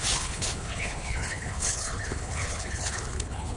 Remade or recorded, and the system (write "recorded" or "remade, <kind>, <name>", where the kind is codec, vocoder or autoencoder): remade, codec, HILCodec